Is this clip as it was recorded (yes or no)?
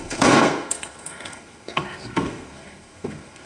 no